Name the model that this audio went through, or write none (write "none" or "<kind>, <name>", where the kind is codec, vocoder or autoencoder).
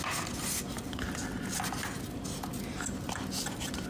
none